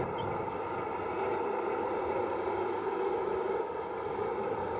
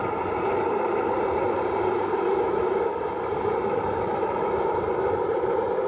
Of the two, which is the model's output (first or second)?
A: second